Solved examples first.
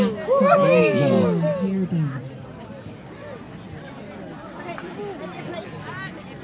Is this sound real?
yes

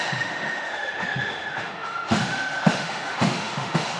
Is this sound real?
no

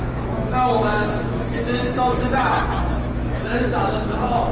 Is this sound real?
no